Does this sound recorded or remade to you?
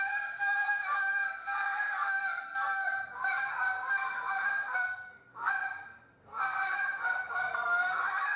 remade